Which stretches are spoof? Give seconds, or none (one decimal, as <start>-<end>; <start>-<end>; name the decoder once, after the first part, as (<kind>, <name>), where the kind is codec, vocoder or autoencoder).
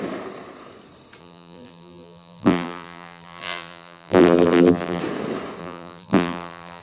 1.2-5.0 (vocoder, BigVGAN v2); 5.6-6.8